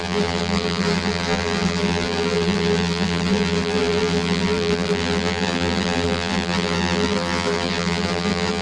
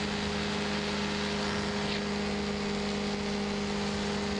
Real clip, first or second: second